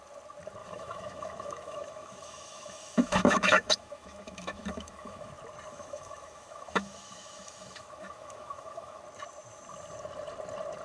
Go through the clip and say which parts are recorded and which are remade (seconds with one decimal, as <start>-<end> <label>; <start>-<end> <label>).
0.0-0.6 recorded; 0.6-5.3 remade; 5.3-5.7 recorded; 5.7-9.0 remade; 9.0-10.8 recorded